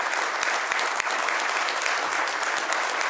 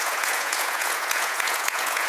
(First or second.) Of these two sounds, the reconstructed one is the second